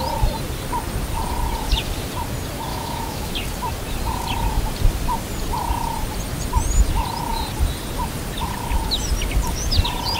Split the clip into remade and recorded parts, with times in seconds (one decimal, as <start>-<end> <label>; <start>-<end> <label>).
0.0-2.7 recorded; 2.7-3.3 remade; 3.3-10.2 recorded